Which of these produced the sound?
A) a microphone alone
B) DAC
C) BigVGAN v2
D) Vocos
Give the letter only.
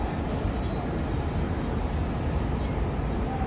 A